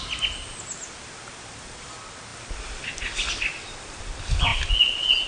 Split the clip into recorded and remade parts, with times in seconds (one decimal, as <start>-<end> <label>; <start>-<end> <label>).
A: 0.0-5.3 recorded